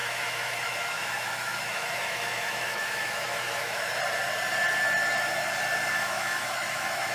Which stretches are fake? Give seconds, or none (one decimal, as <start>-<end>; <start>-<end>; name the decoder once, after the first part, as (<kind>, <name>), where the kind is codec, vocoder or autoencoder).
0.0-3.9 (autoencoder, DAC-VAE); 5.9-7.1